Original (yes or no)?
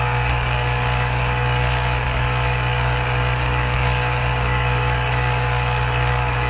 no